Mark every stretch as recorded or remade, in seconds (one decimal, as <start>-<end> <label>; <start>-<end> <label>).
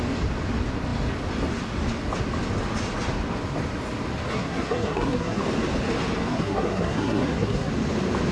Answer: 0.0-4.3 recorded; 4.3-5.4 remade; 5.4-6.3 recorded; 6.3-7.7 remade; 7.7-8.3 recorded